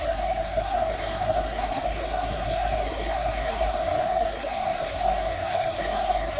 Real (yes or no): no